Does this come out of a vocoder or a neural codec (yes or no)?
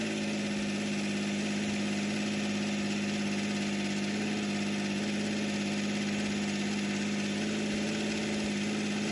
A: no